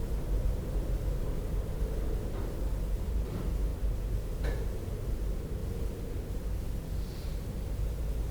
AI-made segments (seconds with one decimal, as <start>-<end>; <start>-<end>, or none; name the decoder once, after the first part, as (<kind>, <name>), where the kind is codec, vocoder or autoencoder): none